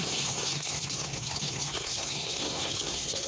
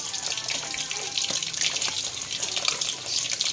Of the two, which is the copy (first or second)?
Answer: first